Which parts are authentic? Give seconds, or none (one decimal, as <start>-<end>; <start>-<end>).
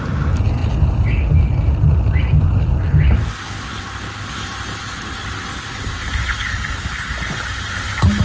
0.0-8.2